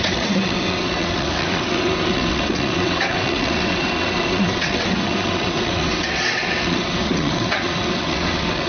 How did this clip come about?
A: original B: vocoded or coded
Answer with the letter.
B